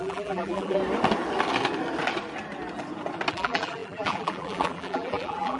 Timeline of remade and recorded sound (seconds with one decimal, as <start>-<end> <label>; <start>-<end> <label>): 0.0-0.8 remade; 0.8-3.3 recorded; 3.3-5.6 remade